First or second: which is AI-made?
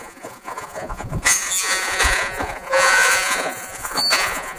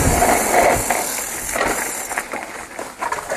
first